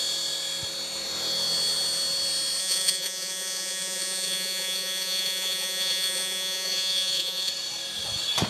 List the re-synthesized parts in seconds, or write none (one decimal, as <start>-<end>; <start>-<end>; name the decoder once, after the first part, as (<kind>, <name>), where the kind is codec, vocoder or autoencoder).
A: 2.6-7.5 (vocoder, Vocos)